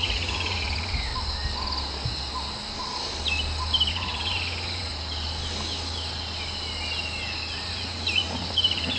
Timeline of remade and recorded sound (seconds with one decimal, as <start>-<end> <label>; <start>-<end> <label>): 0.0-1.1 remade; 1.1-3.9 recorded; 3.9-4.9 remade; 4.9-7.7 recorded; 7.7-9.0 remade